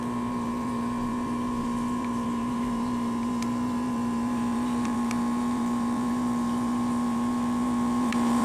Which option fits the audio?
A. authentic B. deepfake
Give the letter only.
B